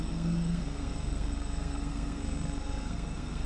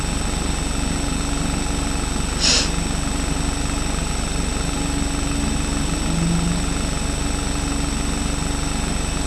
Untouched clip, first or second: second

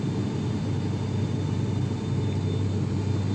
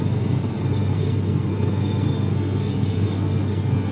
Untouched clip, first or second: first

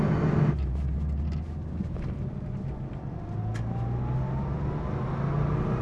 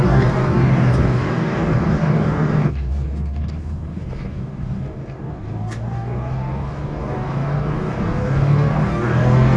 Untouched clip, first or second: first